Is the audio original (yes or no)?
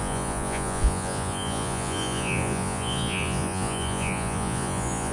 no